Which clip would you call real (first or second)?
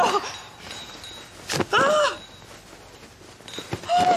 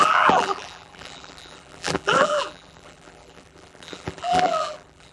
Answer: first